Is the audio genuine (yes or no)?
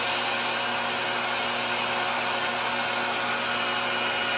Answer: yes